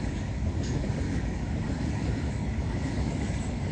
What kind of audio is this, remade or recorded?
remade